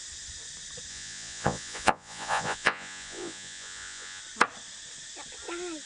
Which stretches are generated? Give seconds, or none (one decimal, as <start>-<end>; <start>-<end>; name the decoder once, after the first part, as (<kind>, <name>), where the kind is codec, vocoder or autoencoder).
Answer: 0.9-4.2 (vocoder, Vocos)